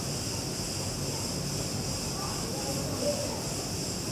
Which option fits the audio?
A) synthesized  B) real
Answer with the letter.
B